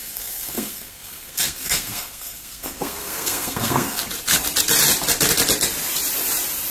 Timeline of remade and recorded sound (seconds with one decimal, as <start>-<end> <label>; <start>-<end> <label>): 0.0-4.0 remade; 4.0-6.7 recorded